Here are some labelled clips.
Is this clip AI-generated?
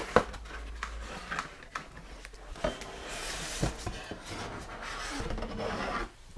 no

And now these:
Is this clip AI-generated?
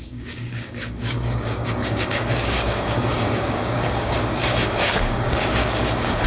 yes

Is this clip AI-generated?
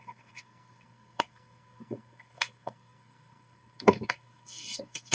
yes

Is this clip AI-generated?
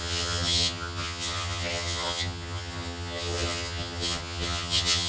yes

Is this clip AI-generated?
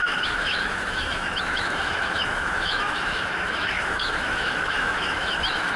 yes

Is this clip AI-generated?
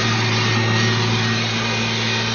no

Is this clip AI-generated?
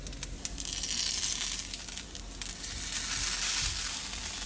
no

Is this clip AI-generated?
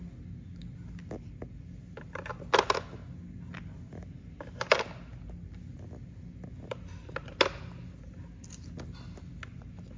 no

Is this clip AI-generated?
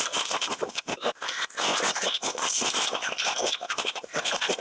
yes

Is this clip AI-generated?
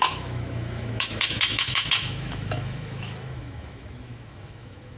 yes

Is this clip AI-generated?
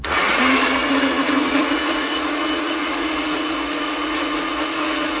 yes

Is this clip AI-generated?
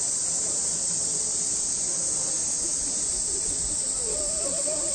yes